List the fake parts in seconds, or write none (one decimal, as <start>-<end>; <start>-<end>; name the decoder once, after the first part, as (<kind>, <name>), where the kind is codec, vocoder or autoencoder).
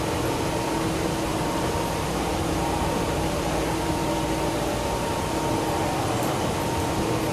1.3-5.1 (vocoder, BigVGAN v2)